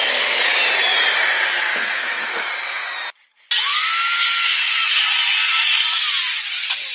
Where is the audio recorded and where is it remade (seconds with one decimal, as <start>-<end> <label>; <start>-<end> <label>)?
0.0-1.7 recorded; 1.7-2.4 remade; 2.4-3.7 recorded; 3.7-5.0 remade; 5.0-6.9 recorded